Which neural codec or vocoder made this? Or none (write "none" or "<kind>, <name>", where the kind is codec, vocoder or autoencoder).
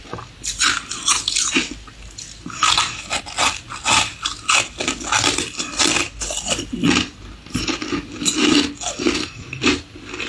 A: none